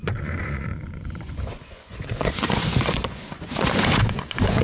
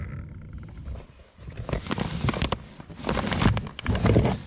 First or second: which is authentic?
second